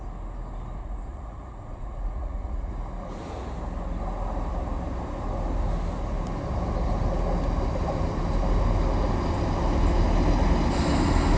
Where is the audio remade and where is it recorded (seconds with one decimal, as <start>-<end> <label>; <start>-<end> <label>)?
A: 0.0-0.8 recorded; 0.8-2.7 remade; 2.7-11.4 recorded